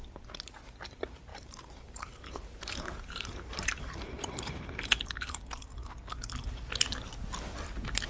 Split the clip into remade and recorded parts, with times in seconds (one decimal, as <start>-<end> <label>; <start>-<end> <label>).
0.0-1.3 recorded; 1.3-5.4 remade; 5.4-8.1 recorded